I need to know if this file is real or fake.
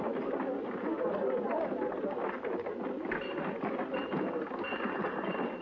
real